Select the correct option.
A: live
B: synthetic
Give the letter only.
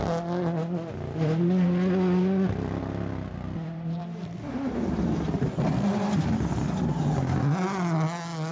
A